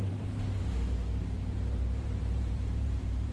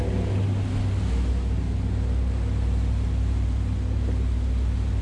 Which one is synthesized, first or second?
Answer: first